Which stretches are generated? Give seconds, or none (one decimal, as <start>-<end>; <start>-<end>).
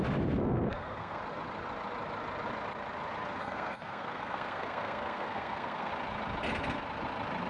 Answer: 0.4-1.2; 3.4-5.9